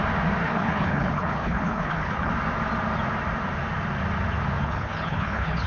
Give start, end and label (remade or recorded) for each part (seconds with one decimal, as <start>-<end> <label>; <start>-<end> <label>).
0.0-0.4 recorded; 0.4-2.3 remade; 2.3-4.6 recorded; 4.6-5.7 remade